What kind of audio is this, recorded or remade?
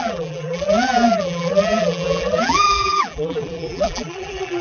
remade